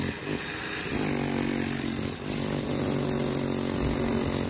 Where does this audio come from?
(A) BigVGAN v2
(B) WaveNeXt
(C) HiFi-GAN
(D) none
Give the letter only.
D